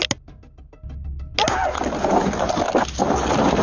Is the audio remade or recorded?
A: recorded